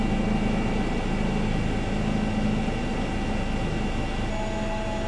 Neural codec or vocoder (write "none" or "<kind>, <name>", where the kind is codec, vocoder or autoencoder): none